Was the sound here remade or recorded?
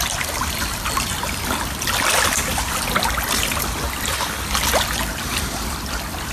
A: recorded